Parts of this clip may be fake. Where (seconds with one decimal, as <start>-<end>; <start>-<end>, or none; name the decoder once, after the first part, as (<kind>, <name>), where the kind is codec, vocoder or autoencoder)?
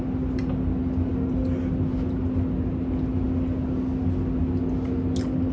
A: none